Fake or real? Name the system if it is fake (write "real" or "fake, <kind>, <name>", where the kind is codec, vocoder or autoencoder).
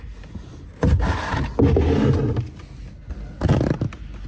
real